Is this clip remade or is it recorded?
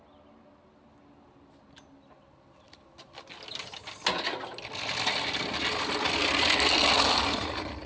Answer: recorded